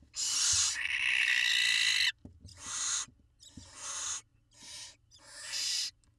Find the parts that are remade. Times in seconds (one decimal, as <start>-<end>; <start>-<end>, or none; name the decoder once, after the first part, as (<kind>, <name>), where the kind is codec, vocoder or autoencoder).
none